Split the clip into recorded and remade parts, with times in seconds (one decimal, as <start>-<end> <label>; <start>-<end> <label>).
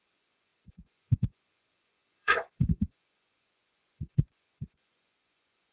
0.0-5.7 remade